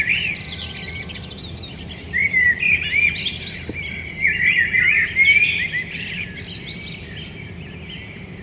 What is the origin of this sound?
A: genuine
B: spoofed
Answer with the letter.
A